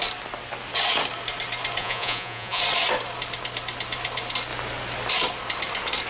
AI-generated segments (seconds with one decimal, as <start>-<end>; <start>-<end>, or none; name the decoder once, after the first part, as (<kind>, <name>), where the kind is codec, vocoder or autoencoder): 1.8-2.6 (vocoder, Vocos)